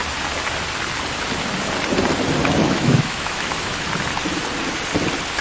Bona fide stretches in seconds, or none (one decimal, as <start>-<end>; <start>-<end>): 0.0-2.6; 3.9-5.4